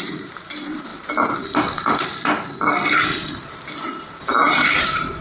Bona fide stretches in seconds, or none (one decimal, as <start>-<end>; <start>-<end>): 0.9-1.6; 2.1-4.0